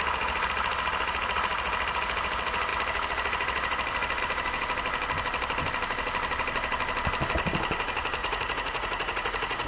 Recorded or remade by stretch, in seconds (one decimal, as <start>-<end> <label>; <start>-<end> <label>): 0.0-8.2 recorded; 8.2-9.7 remade